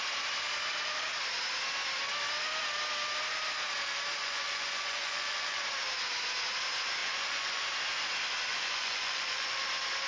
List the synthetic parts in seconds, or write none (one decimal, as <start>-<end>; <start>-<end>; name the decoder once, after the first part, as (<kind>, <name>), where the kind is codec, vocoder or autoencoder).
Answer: 4.2-5.6 (vocoder, Vocos); 7.0-7.6; 8.5-9.7